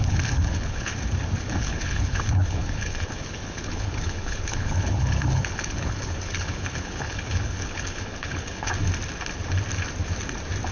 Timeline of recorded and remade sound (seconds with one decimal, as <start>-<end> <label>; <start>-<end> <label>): 0.0-0.9 remade; 0.9-1.5 recorded; 1.5-8.7 remade; 8.7-10.7 recorded